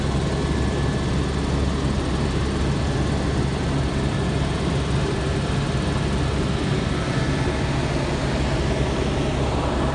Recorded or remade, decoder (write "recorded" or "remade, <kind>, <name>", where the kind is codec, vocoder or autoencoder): recorded